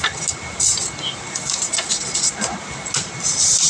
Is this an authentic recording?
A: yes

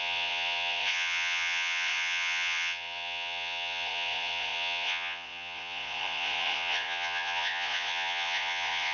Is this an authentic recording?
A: no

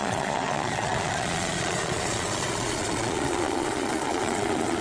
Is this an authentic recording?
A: no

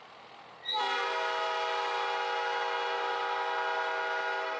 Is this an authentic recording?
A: yes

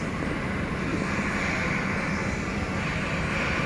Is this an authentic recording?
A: yes